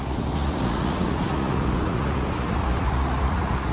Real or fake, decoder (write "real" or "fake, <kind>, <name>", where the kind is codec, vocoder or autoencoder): fake, vocoder, Vocos